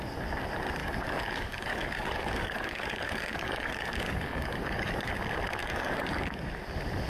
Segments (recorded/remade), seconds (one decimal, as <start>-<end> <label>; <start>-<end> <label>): 0.0-0.8 recorded; 0.8-5.1 remade; 5.1-5.6 recorded; 5.6-6.6 remade; 6.6-7.1 recorded